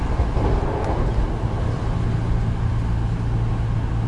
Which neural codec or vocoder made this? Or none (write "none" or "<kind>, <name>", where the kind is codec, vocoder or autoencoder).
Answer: none